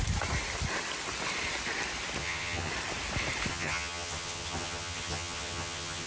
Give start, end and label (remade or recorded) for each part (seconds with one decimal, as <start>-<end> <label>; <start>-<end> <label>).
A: 0.0-2.2 recorded; 2.2-2.7 remade; 2.7-3.5 recorded; 3.5-6.1 remade